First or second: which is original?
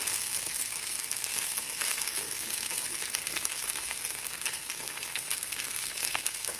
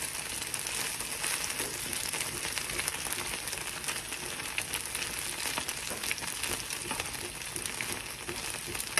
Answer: second